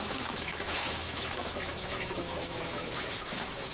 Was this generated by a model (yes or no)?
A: yes